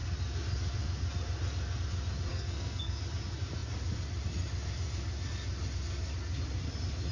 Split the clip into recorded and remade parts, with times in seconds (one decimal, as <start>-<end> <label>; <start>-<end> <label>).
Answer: 0.0-2.3 recorded; 2.3-3.0 remade; 3.0-7.1 recorded